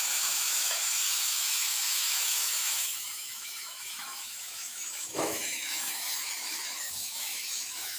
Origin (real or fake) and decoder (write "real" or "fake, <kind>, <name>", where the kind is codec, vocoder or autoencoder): fake, autoencoder, DAC-VAE